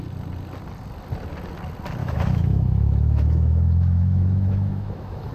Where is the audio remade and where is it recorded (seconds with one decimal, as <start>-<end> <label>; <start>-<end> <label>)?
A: 0.0-2.0 recorded; 2.0-5.3 remade